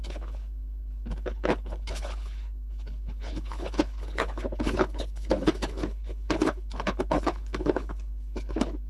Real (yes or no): no